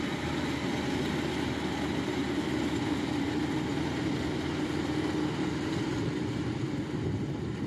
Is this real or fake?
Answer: real